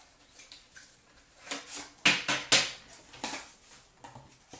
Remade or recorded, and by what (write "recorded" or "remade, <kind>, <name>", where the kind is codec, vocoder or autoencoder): recorded